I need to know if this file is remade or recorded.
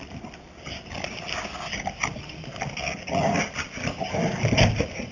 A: recorded